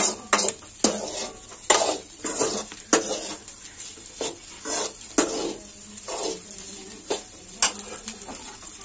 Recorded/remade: recorded